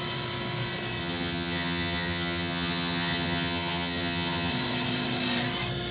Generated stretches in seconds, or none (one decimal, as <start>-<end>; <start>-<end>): 1.0-4.5